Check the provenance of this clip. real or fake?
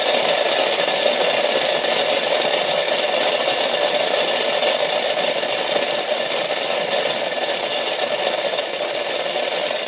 real